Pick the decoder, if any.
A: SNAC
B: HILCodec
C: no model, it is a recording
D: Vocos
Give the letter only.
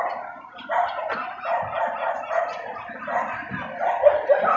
C